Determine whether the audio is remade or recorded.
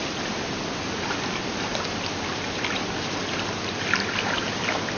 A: recorded